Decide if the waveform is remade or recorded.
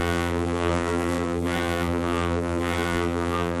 remade